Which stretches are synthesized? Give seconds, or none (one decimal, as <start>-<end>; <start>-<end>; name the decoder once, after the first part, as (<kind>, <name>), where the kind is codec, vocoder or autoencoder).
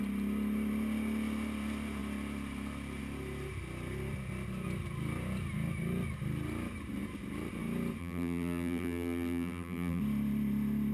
8.0-10.0 (vocoder, BigVGAN v2)